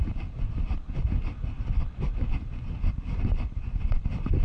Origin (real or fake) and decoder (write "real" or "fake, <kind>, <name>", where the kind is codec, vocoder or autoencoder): real